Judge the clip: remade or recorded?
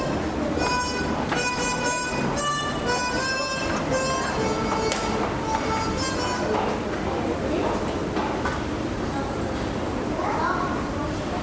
recorded